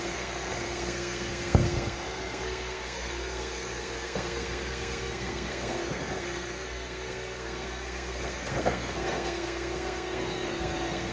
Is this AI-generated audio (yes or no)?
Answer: yes